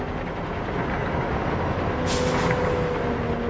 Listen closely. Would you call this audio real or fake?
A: real